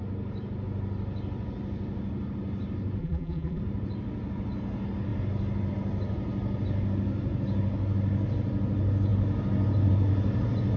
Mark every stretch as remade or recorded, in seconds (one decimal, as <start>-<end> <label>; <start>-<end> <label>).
0.0-3.0 recorded; 3.0-3.6 remade; 3.6-10.8 recorded